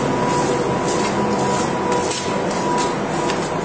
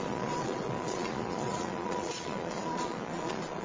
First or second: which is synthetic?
second